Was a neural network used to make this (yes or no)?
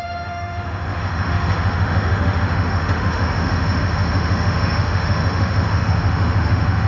yes